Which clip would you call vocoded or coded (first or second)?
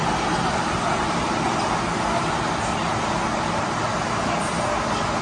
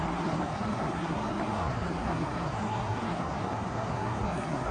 second